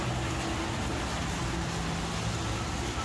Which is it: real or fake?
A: real